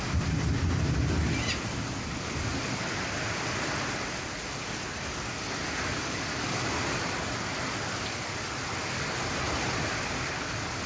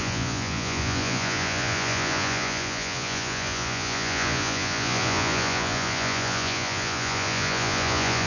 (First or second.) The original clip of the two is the first